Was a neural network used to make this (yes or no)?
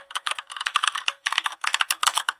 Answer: yes